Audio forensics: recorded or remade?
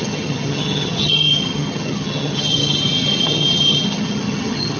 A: remade